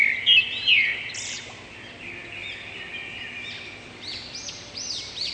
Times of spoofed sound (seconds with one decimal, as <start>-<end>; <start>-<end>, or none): none